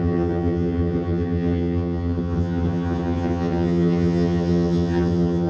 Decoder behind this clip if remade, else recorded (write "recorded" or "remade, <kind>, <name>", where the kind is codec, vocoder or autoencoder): remade, vocoder, HiFi-GAN